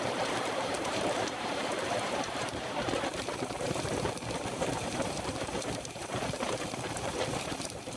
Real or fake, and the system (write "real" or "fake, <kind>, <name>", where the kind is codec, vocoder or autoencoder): fake, vocoder, BigVGAN v2